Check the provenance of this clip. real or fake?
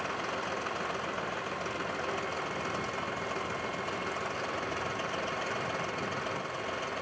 real